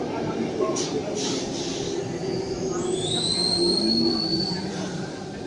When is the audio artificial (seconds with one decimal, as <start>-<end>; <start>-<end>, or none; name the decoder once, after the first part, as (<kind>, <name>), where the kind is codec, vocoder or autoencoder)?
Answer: 0.0-1.0 (vocoder, BigVGAN v2); 4.3-5.5